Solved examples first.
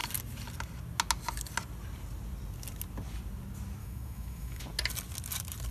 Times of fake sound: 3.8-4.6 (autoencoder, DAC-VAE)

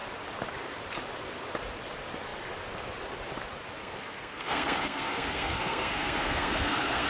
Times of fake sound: 3.8-7.1 (codec, SNAC)

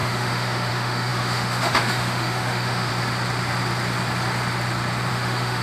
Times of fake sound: 0.0-2.9 (autoencoder, DAC-VAE); 5.1-5.6

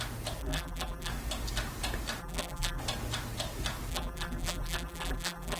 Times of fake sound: 0.4-1.1 (vocoder, BigVGAN v2); 2.2-2.8; 3.9-5.6

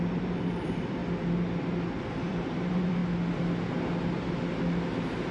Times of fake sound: 0.0-1.0 (vocoder, BigVGAN v2); 1.9-3.0

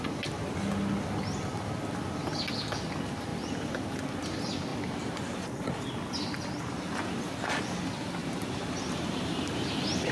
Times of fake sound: 4.7-5.2 (vocoder, BigVGAN v2); 8.2-10.1